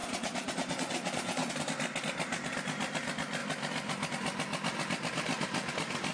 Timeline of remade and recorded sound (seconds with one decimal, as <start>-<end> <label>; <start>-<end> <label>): 0.0-1.5 remade; 1.5-6.1 recorded